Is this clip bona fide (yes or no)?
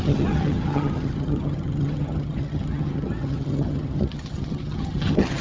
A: no